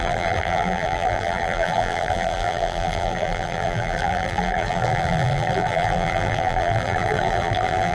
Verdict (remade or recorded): remade